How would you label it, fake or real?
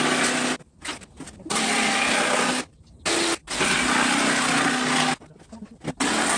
real